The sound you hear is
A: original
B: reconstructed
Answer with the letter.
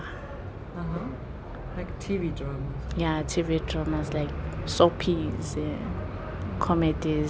A